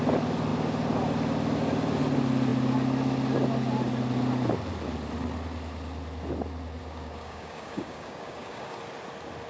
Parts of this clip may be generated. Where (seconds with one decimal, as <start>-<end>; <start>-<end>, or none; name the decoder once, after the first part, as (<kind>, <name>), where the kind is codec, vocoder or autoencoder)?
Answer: 6.8-8.8 (codec, DAC)